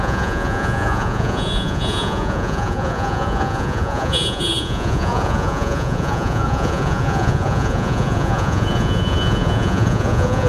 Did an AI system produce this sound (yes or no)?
yes